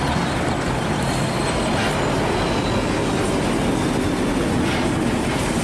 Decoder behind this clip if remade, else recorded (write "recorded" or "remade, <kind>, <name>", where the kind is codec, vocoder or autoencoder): recorded